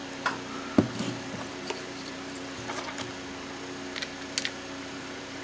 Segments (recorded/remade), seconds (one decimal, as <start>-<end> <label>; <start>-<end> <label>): 0.0-0.8 recorded; 0.8-3.1 remade; 3.1-4.9 recorded; 4.9-5.4 remade